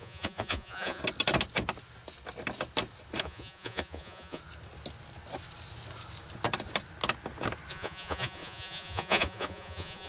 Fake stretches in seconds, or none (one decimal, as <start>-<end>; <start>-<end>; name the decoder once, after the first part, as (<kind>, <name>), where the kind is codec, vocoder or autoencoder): 0.0-1.0 (vocoder, Vocos); 3.2-4.4; 7.7-10.1